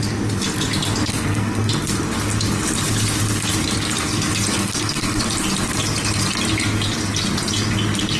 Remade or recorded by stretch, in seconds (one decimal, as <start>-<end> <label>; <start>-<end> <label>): 0.0-1.0 recorded; 1.0-1.7 remade; 1.7-4.5 recorded; 4.5-5.2 remade; 5.2-8.2 recorded